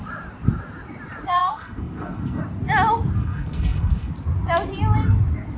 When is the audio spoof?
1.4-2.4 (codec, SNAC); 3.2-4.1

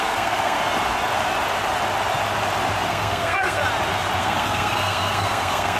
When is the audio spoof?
0.0-0.6 (codec, SNAC); 2.9-3.6; 4.2-5.8